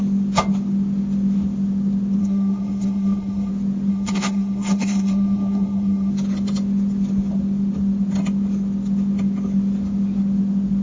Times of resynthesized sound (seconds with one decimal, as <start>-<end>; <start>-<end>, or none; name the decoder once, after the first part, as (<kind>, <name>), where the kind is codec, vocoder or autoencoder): 2.2-3.5 (codec, SNAC); 3.9-6.1